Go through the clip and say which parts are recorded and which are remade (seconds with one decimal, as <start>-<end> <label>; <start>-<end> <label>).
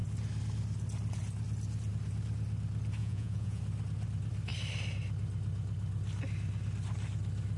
0.0-3.0 recorded; 3.0-3.6 remade; 3.6-7.6 recorded